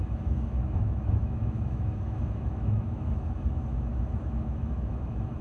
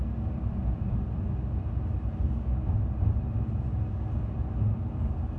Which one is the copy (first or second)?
first